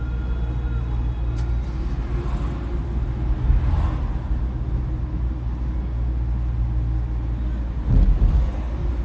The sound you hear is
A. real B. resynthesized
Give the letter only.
A